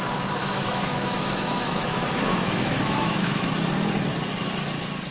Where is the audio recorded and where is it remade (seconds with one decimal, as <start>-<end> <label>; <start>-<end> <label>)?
0.0-0.4 recorded; 0.4-3.5 remade; 3.5-5.1 recorded